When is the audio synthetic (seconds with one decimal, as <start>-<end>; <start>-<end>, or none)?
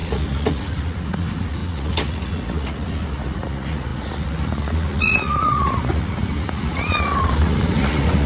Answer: 0.0-8.3